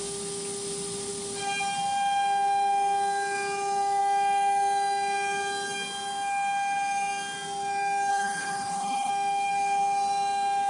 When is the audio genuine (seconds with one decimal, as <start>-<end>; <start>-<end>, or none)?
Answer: 0.0-8.1; 9.1-10.7